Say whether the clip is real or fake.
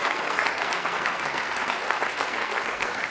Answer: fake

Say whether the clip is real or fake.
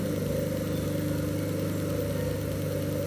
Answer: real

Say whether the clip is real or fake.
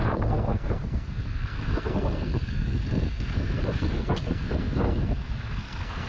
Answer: fake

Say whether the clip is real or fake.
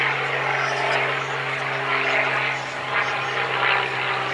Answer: real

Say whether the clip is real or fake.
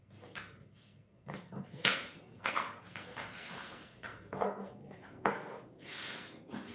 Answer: fake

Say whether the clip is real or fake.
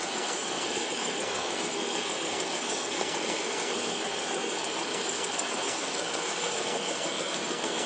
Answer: fake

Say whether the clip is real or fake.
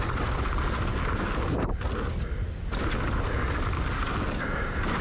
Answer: real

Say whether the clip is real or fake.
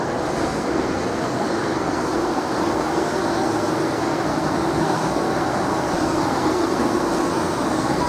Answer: fake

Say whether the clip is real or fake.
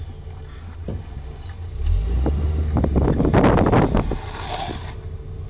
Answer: real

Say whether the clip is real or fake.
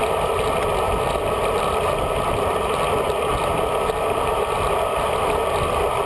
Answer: real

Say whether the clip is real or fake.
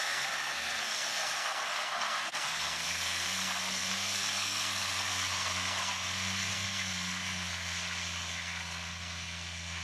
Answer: fake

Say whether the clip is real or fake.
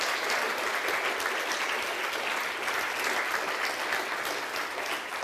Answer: real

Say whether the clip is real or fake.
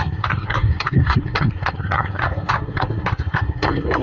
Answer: fake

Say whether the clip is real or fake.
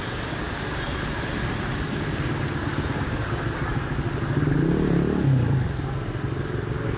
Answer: real